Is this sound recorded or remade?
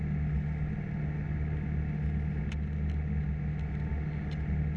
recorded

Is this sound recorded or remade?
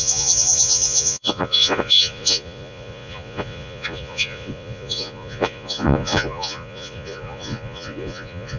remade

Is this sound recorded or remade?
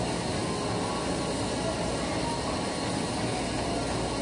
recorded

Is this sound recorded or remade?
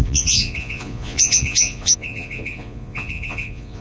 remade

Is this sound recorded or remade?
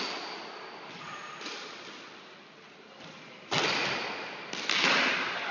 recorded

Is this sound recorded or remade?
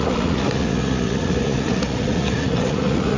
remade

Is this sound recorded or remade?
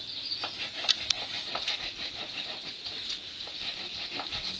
recorded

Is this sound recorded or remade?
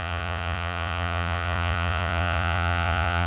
remade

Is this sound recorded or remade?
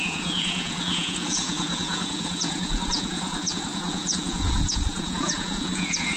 remade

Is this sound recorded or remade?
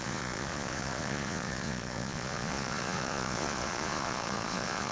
remade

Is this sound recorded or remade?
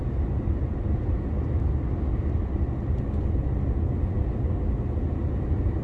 recorded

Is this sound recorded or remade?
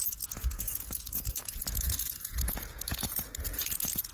remade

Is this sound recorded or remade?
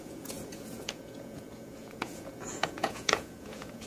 remade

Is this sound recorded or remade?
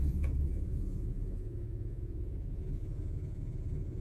remade